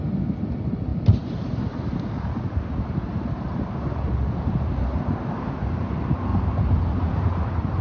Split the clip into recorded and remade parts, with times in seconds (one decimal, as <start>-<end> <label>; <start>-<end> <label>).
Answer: 0.0-0.9 recorded; 0.9-5.6 remade; 5.6-6.3 recorded; 6.3-7.8 remade